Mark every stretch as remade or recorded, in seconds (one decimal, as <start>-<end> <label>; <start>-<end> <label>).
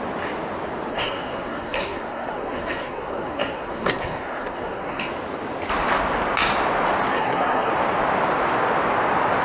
0.0-0.9 recorded; 0.9-5.1 remade; 5.1-7.1 recorded; 7.1-7.7 remade; 7.7-9.4 recorded